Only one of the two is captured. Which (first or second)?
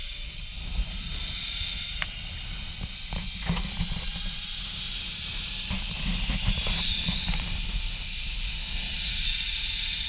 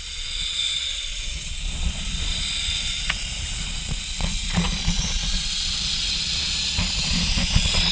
first